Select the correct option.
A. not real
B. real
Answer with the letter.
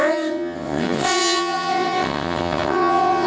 A